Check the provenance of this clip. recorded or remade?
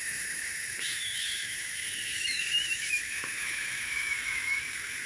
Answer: remade